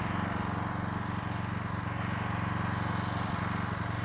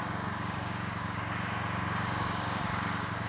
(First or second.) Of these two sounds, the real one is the first